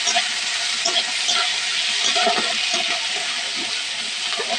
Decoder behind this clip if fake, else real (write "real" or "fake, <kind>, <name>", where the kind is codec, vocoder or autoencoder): real